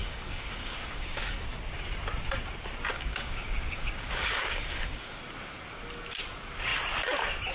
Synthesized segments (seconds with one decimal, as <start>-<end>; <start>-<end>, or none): 0.0-1.4; 2.9-5.2